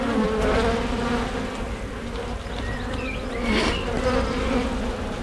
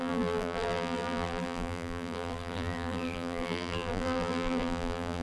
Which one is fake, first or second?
second